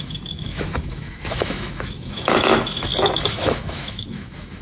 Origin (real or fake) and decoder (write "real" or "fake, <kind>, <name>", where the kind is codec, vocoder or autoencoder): fake, autoencoder, DAC-VAE